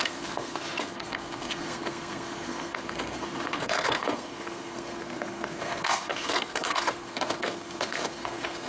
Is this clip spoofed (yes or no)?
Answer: yes